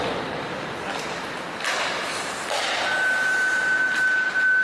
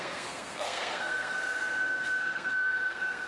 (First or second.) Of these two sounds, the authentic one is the first